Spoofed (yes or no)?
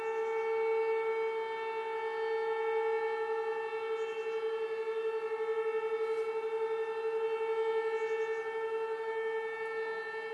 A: no